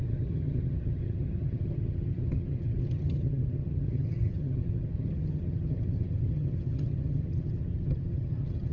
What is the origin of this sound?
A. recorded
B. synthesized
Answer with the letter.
B